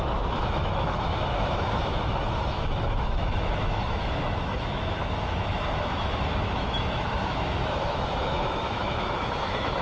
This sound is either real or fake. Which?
fake